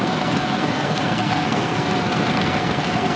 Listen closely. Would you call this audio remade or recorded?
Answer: remade